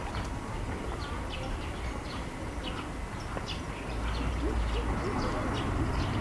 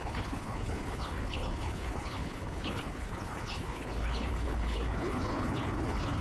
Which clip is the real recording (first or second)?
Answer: first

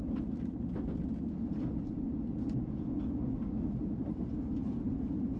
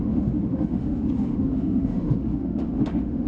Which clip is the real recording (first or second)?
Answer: first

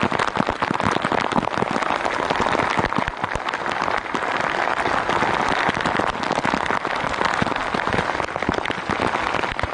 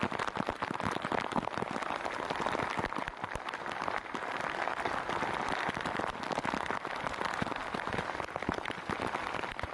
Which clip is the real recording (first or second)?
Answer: first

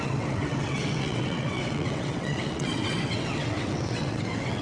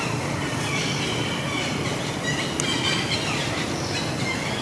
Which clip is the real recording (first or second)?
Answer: second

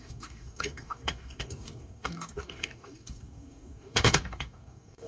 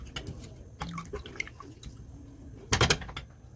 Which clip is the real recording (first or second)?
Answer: second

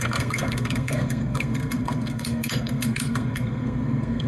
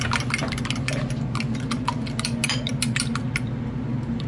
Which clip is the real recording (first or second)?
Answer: second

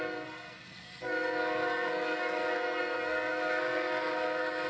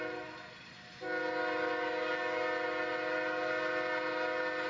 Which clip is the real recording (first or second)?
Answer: second